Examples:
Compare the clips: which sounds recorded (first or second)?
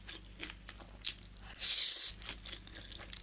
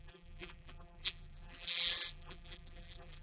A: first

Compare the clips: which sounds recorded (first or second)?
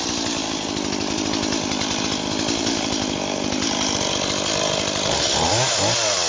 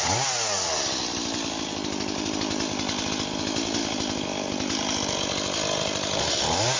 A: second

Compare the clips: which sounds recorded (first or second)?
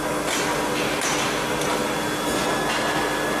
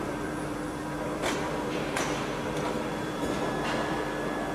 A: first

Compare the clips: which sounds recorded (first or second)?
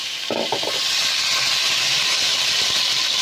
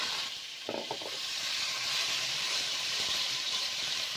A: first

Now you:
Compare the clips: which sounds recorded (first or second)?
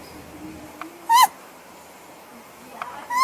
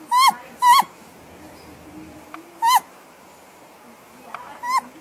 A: second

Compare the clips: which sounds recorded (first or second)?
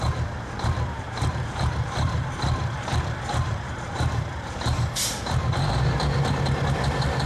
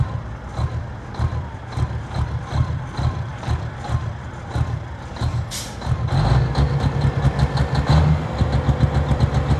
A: second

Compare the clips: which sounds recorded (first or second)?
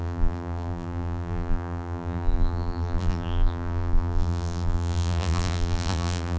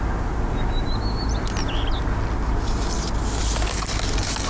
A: second